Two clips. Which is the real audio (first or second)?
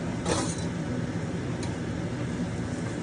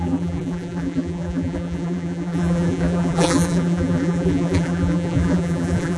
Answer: first